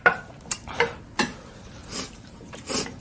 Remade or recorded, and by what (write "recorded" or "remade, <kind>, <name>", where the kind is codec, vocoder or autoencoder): remade, vocoder, BigVGAN v2